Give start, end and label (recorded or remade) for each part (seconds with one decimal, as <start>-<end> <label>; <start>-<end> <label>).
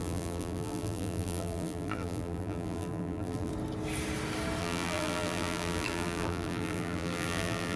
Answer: 0.0-3.5 remade; 3.5-4.6 recorded; 4.6-7.8 remade